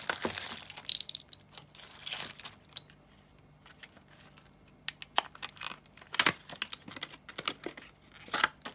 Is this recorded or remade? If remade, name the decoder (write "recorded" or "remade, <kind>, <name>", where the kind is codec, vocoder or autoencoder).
recorded